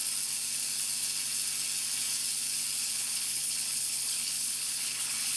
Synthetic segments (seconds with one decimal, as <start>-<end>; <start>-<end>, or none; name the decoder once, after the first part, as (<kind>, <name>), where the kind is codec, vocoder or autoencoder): 2.9-5.4 (codec, HILCodec)